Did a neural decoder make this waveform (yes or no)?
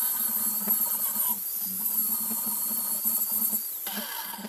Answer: no